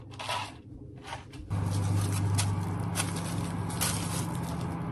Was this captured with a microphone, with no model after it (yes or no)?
yes